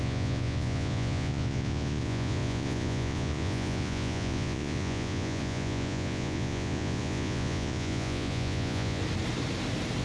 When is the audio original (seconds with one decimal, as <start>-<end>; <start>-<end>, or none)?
9.0-10.0